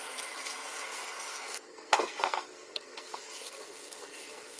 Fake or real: fake